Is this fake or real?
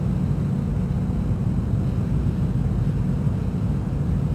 real